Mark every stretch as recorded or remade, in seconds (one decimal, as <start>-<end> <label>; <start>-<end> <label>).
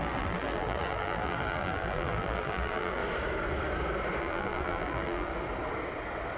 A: 0.0-3.0 remade; 3.0-4.2 recorded; 4.2-5.3 remade; 5.3-6.4 recorded